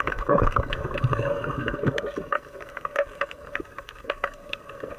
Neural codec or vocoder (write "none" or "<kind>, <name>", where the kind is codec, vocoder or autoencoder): codec, SNAC